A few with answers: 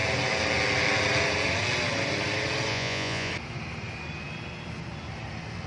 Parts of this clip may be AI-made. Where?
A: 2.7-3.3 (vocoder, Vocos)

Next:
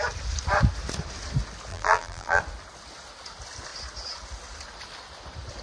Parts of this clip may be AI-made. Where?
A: 1.7-2.4 (vocoder, BigVGAN v2)

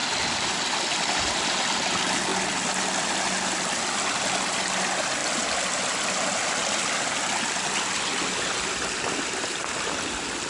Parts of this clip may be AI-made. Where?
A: none

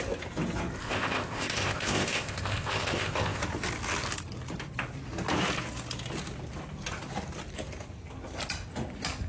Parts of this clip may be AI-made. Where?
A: 0.8-3.4 (codec, ZipCodec)

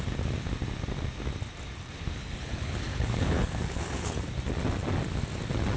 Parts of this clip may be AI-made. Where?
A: 2.2-4.3 (codec, HILCodec)

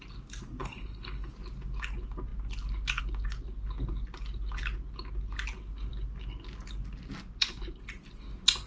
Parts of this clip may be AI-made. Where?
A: 0.6-1.3 (codec, HILCodec)

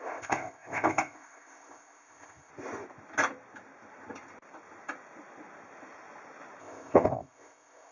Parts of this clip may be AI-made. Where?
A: 0.0-2.5 (codec, ZipCodec); 6.6-7.9